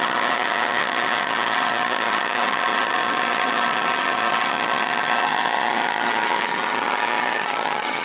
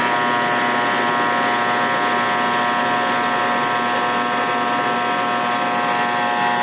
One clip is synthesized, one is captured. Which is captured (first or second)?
second